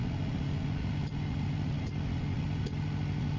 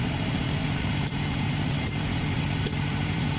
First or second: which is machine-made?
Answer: second